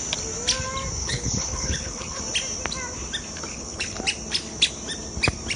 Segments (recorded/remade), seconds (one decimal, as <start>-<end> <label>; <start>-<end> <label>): 0.0-1.0 recorded; 1.0-2.2 remade; 2.2-3.5 recorded; 3.5-4.0 remade; 4.0-5.6 recorded